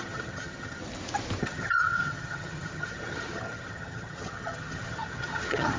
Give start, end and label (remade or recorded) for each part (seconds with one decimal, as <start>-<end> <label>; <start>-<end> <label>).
0.0-0.8 remade; 0.8-1.4 recorded; 1.4-5.8 remade